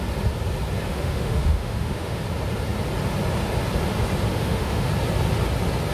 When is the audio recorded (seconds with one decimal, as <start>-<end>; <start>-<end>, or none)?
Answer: 0.0-0.9; 2.2-4.3; 4.9-5.9